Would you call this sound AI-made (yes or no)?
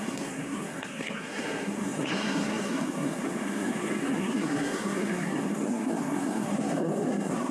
yes